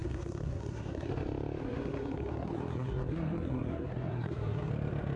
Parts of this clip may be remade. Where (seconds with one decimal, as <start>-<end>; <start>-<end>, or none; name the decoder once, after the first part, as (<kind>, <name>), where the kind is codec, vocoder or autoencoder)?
0.0-1.1 (codec, SNAC); 1.6-4.7